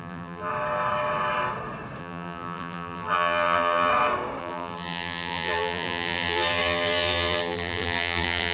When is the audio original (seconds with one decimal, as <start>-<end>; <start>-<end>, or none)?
0.5-2.0; 3.9-4.4

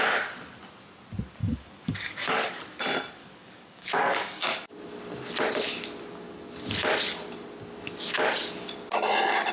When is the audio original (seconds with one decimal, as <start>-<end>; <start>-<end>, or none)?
0.0-1.4; 2.6-3.2; 4.4-9.5

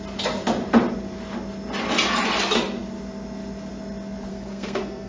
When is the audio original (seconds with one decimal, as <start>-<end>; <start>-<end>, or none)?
0.0-4.3

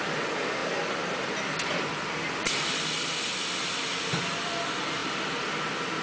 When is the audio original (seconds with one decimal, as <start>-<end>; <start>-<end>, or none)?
0.0-6.0

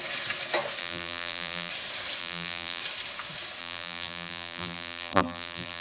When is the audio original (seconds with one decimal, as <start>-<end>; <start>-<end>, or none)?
0.0-0.8; 1.7-2.2; 2.8-3.6

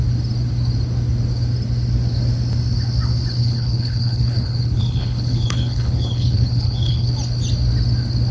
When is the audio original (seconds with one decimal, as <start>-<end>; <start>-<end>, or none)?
0.0-3.4; 7.1-8.3

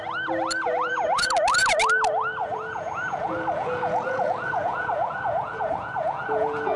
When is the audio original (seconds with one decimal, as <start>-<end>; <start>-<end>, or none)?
0.0-0.6; 1.3-2.4